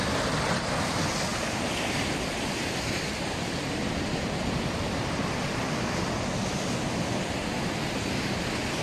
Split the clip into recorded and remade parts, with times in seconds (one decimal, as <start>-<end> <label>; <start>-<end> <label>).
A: 0.0-1.3 recorded; 1.3-6.4 remade; 6.4-8.8 recorded

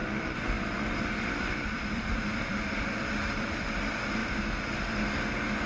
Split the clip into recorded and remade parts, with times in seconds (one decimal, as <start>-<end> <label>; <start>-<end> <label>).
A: 0.0-3.4 remade; 3.4-4.2 recorded; 4.2-5.0 remade; 5.0-5.7 recorded

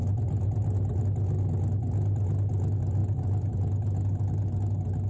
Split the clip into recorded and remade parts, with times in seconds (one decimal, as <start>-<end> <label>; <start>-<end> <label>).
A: 0.0-1.0 remade; 1.0-3.0 recorded; 3.0-3.5 remade; 3.5-5.1 recorded